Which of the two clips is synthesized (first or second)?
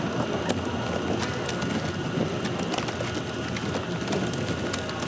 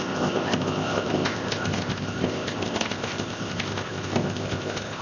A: second